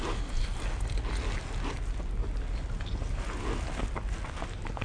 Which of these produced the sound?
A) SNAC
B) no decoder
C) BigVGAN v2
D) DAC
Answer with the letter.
B